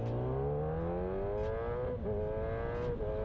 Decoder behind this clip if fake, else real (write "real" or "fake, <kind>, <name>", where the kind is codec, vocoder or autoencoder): real